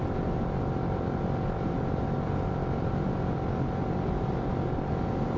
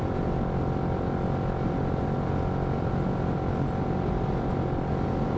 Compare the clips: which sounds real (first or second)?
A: second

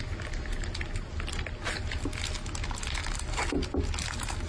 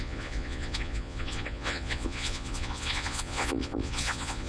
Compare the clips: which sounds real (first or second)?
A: first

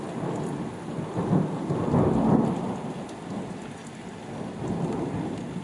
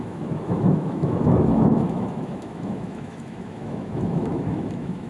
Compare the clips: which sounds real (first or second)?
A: first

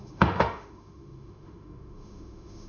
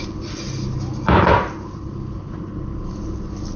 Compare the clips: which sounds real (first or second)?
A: second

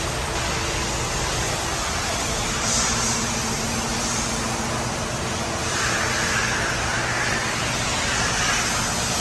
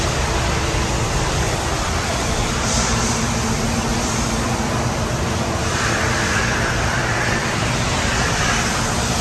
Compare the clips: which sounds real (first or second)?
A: first